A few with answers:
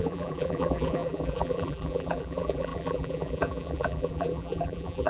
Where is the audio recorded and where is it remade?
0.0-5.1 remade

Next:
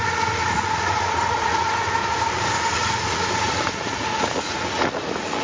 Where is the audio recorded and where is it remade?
0.0-5.4 remade

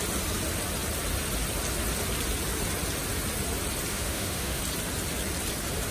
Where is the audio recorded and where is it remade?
0.0-3.9 recorded; 3.9-4.6 remade; 4.6-5.9 recorded